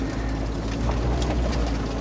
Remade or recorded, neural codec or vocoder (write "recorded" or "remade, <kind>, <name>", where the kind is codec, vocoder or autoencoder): recorded